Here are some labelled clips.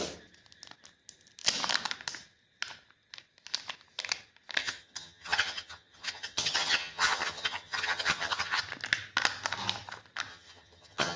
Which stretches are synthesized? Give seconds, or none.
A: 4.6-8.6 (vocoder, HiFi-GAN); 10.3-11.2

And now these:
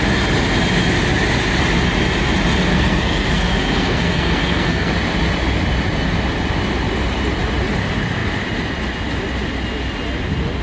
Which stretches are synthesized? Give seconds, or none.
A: 2.7-4.9 (codec, SNAC)

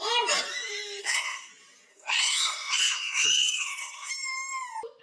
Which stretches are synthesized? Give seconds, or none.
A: 1.0-1.5 (codec, SNAC); 1.9-4.1

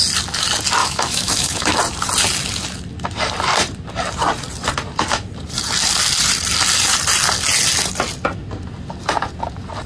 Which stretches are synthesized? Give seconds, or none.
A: 0.8-1.8 (autoencoder, DAC-VAE)

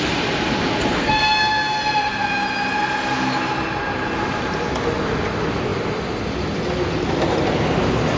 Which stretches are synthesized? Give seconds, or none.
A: 1.0-2.1 (codec, SNAC)